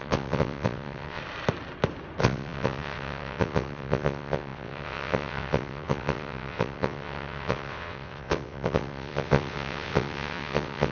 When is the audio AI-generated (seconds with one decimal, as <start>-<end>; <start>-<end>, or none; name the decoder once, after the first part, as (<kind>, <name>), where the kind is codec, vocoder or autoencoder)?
0.0-1.2 (vocoder, WaveNeXt); 2.2-10.9